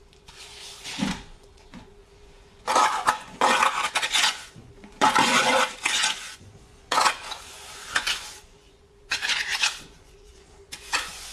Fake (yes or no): yes